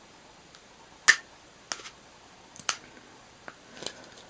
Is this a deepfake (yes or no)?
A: no